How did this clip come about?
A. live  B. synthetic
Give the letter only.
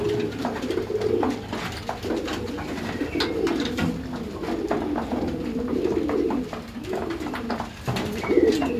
A